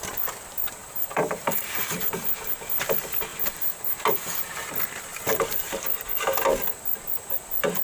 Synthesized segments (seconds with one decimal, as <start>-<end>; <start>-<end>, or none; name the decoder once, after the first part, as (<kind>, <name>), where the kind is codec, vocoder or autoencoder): 0.8-2.8 (vocoder, BigVGAN v2); 3.3-4.4